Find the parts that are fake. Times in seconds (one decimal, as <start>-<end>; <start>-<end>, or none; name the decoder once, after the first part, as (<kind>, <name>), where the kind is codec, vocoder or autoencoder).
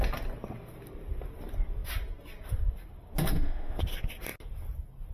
3.3-3.8 (autoencoder, DAC-VAE)